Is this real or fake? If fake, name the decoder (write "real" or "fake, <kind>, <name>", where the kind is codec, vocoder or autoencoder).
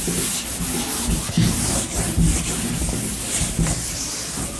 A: real